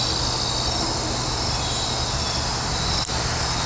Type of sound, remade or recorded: recorded